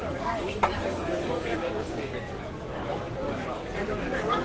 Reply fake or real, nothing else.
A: fake